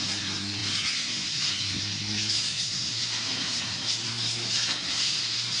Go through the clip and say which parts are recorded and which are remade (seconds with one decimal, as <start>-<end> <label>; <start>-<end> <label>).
0.0-5.6 remade